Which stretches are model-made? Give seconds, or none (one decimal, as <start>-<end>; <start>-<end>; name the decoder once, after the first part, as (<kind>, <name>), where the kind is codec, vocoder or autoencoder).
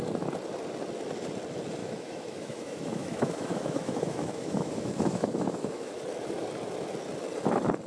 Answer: 1.8-6.0 (autoencoder, DAC-VAE)